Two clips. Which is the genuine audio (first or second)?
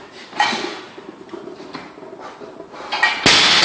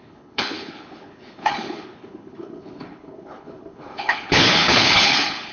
first